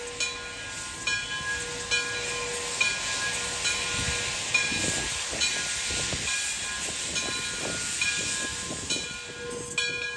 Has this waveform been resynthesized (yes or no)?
no